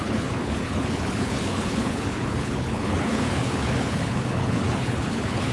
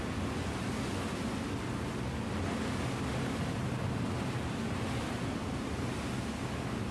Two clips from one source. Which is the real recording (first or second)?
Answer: second